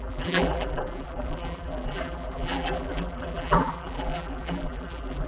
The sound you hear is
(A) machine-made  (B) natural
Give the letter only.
A